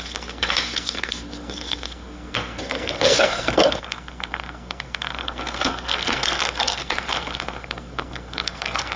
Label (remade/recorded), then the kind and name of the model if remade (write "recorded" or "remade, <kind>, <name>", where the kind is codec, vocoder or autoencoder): remade, codec, SNAC